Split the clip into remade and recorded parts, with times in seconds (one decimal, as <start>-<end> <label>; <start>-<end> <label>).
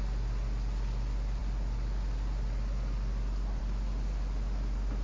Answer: 0.0-5.0 recorded